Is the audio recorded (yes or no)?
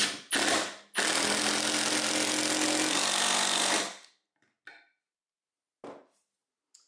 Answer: yes